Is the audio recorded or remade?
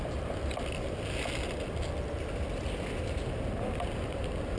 recorded